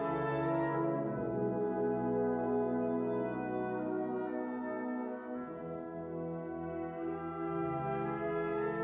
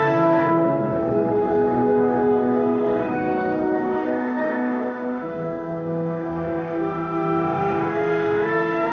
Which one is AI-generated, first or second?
second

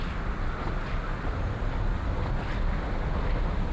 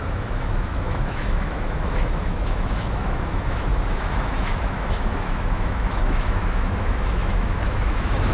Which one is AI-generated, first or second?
second